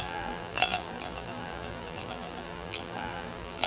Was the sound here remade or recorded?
remade